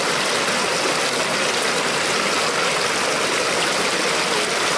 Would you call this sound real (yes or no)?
yes